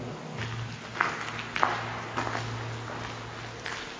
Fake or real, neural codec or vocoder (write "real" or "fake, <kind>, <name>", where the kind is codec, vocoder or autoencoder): real